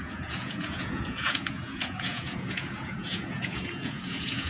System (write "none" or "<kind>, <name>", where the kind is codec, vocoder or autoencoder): vocoder, Vocos